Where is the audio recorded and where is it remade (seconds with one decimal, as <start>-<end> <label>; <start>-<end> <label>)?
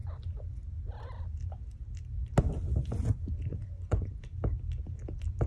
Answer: 0.0-3.5 recorded; 3.5-4.2 remade; 4.2-5.5 recorded